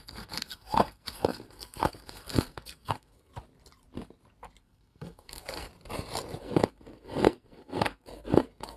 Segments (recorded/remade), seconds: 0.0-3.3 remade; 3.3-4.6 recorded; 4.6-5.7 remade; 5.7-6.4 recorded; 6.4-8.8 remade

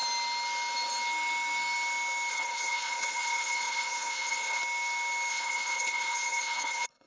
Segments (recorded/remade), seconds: 0.0-2.3 recorded; 2.3-4.6 remade; 4.6-5.3 recorded; 5.3-7.1 remade